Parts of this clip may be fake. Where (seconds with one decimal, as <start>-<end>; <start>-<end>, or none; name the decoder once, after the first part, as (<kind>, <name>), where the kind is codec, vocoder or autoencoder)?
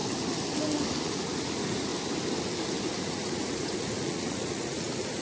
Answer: 1.0-1.9 (vocoder, Vocos); 3.0-5.2